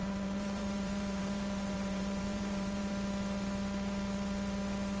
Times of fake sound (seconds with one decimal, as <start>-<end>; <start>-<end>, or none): 0.0-2.9